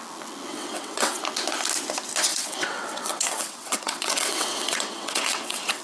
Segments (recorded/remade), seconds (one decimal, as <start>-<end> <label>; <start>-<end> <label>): 0.0-0.5 recorded; 0.5-1.2 remade; 1.2-2.3 recorded; 2.3-5.8 remade